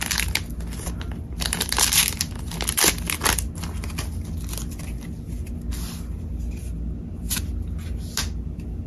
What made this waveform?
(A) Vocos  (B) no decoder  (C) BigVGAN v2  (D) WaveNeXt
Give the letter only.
B